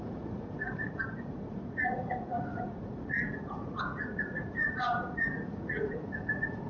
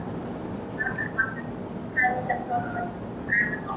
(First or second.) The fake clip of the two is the first